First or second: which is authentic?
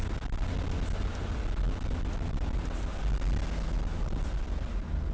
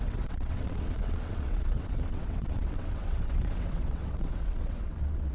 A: first